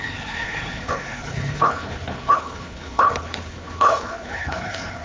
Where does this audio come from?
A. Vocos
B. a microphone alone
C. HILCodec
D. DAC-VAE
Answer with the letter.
C